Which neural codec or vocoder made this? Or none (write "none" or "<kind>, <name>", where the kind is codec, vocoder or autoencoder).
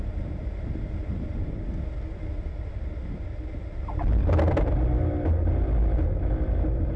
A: none